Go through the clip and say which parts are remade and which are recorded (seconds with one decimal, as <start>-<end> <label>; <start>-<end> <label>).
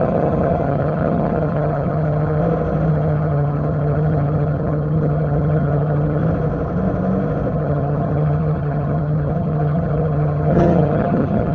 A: 0.0-2.4 remade; 2.4-2.9 recorded; 2.9-6.2 remade; 6.2-7.5 recorded; 7.5-11.5 remade